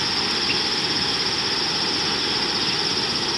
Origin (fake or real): real